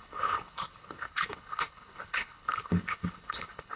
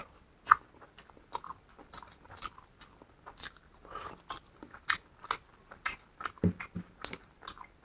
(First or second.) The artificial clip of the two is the first